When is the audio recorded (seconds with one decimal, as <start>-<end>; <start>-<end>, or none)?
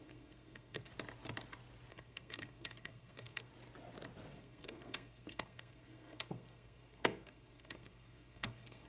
0.9-1.9; 3.5-4.3